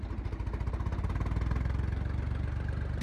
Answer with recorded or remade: recorded